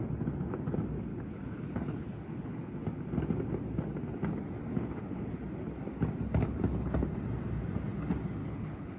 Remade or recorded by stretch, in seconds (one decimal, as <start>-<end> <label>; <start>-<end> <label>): 0.0-1.1 recorded; 1.1-2.7 remade; 2.7-4.7 recorded; 4.7-5.4 remade; 5.4-8.4 recorded; 8.4-9.0 remade